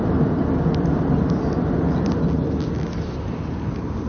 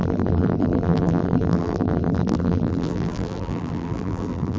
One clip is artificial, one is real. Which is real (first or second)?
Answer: first